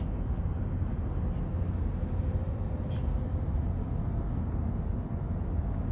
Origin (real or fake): real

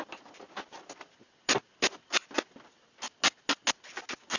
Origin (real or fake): real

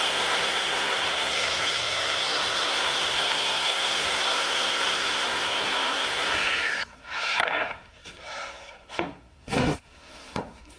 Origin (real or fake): fake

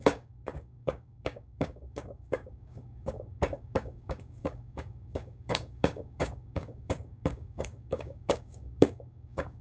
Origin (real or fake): fake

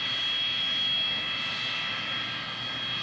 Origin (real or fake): real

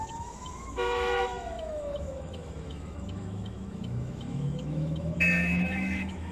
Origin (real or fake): fake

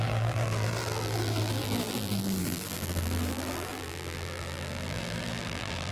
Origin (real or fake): fake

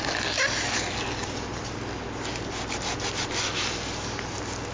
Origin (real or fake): real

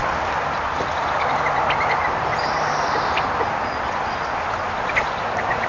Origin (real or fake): real